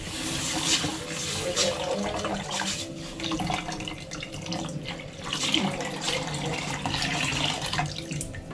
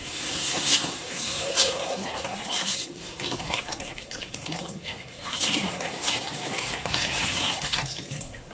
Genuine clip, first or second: first